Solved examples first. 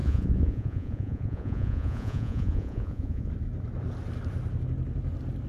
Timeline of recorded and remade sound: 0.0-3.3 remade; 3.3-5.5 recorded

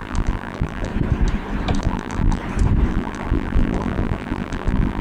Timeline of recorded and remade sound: 0.0-0.9 remade; 0.9-1.8 recorded; 1.8-2.4 remade; 2.4-2.9 recorded; 2.9-5.0 remade